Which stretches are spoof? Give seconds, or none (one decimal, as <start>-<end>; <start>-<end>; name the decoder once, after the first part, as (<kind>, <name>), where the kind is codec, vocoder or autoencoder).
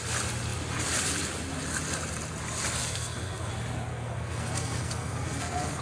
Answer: 2.8-3.5 (codec, SNAC); 3.9-5.8